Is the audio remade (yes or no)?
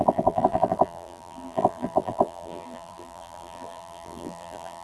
yes